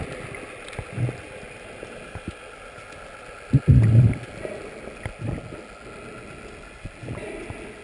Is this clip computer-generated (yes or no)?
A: no